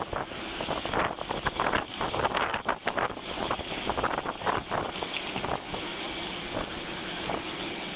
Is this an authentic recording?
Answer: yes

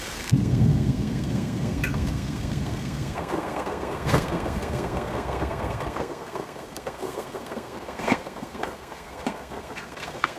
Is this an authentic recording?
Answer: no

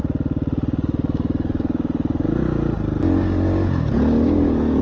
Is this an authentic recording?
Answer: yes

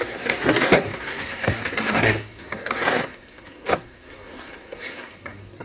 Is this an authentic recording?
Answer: no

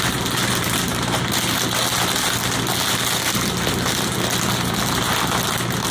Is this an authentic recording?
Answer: yes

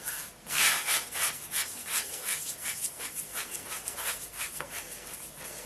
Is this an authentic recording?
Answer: no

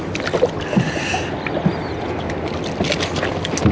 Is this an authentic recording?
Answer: yes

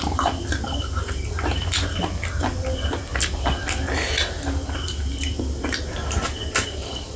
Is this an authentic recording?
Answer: yes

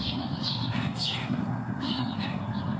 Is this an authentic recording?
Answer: no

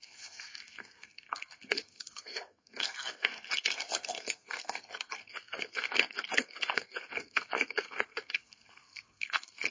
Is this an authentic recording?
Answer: no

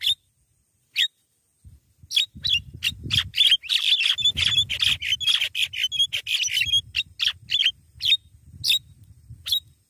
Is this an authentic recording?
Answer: yes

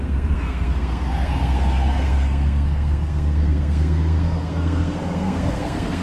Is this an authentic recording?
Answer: no